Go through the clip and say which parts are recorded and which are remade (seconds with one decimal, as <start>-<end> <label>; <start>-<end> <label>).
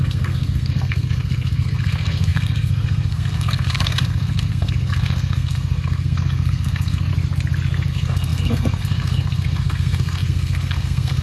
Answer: 0.0-7.1 remade; 7.1-7.9 recorded; 7.9-11.2 remade